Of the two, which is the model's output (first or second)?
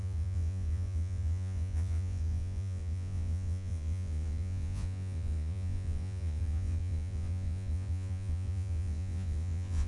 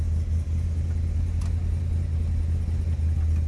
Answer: first